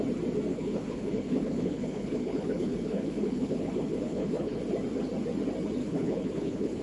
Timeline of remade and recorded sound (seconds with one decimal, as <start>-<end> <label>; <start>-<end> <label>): 0.0-0.5 recorded; 0.5-4.6 remade; 4.6-5.8 recorded; 5.8-6.8 remade